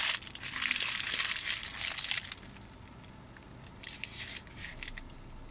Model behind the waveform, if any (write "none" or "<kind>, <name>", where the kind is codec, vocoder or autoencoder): none